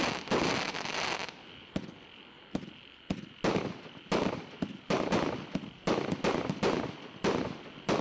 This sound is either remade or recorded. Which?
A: recorded